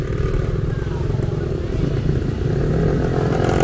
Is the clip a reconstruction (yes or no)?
no